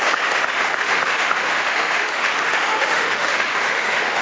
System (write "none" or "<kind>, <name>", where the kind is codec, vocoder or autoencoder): autoencoder, DAC-VAE